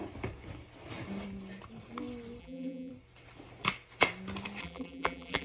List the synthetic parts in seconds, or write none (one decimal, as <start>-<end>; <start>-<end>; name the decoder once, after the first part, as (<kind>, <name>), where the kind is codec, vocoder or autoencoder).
2.4-2.9 (vocoder, BigVGAN v2); 4.6-5.4